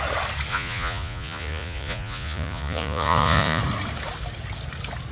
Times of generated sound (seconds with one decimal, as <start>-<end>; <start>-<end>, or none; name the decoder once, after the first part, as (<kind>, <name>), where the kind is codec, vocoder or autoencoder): 0.5-3.6 (vocoder, Vocos)